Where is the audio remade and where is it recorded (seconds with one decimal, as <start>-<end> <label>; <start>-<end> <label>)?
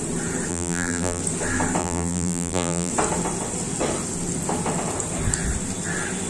0.0-0.5 recorded; 0.5-1.2 remade; 1.2-1.8 recorded; 1.8-2.9 remade; 2.9-6.3 recorded